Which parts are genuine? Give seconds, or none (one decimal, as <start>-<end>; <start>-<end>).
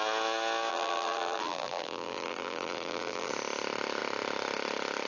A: 0.0-0.7; 3.3-5.1